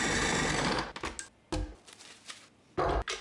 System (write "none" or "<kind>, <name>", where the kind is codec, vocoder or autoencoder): none